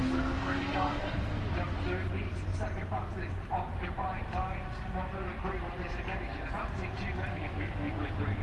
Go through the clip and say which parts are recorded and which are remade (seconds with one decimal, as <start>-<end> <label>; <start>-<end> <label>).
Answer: 0.0-1.4 remade; 1.4-7.3 recorded; 7.3-7.9 remade; 7.9-8.4 recorded